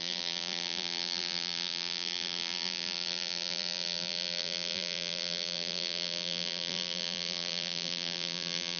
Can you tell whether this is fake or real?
fake